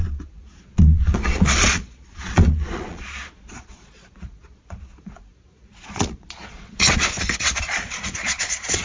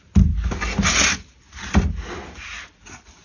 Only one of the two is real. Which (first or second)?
second